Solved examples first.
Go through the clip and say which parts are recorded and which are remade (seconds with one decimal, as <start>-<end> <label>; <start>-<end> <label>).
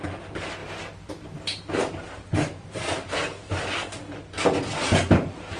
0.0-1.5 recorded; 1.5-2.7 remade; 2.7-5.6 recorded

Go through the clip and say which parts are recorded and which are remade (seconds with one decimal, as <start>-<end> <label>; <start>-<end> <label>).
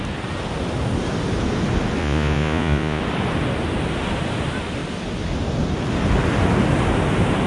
0.0-2.0 recorded; 2.0-3.0 remade; 3.0-7.5 recorded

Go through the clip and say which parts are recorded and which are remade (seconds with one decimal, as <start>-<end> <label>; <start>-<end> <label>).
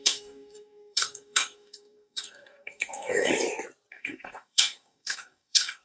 0.0-3.3 remade; 3.3-3.9 recorded; 3.9-5.8 remade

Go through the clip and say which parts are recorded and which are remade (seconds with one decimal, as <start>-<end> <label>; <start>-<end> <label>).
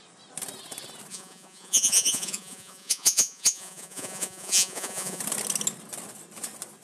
0.0-1.1 recorded; 1.1-5.2 remade; 5.2-6.8 recorded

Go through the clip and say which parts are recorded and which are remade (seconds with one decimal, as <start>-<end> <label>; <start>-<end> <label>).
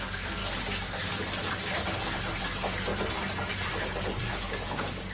0.0-0.4 remade; 0.4-2.4 recorded; 2.4-2.9 remade; 2.9-4.3 recorded; 4.3-5.1 remade